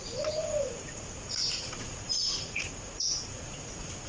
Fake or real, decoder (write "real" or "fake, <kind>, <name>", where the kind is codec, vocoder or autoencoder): fake, vocoder, Vocos